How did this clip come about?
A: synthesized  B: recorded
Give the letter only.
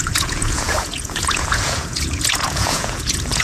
A